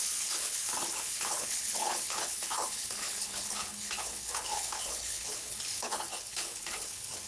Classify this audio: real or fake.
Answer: fake